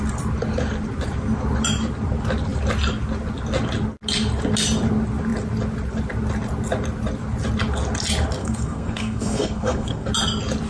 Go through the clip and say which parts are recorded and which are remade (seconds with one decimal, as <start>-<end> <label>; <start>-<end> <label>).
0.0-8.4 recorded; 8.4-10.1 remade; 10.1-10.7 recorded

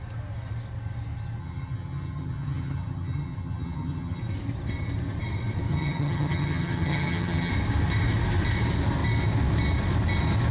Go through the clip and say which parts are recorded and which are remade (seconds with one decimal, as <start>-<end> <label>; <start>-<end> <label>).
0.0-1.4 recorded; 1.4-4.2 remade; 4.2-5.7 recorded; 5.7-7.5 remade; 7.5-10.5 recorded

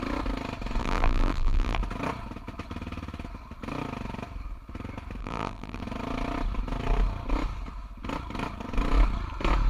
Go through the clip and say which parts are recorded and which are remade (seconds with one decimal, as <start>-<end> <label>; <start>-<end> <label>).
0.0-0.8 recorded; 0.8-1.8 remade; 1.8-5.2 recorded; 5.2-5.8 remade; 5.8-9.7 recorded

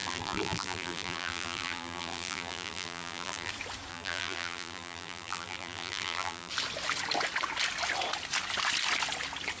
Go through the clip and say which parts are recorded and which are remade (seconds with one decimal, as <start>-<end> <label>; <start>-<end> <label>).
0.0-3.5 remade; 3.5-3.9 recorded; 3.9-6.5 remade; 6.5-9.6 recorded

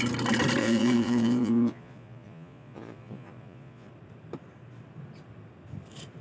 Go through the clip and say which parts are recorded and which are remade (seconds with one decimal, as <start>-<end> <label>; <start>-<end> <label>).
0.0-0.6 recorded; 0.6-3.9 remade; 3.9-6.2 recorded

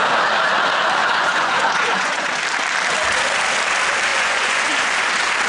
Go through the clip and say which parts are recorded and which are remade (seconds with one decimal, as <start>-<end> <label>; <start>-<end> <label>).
0.0-1.0 recorded; 1.0-2.4 remade; 2.4-4.1 recorded; 4.1-5.1 remade; 5.1-5.5 recorded

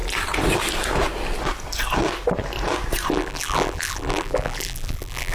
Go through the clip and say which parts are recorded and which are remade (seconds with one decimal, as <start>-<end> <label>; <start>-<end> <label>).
0.0-3.1 recorded; 3.1-5.3 remade

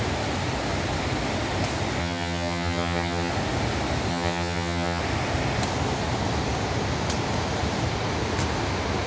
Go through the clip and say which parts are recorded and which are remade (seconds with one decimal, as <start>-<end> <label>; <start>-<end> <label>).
0.0-2.0 recorded; 2.0-3.3 remade; 3.3-4.1 recorded; 4.1-5.0 remade; 5.0-9.1 recorded